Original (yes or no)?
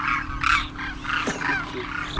yes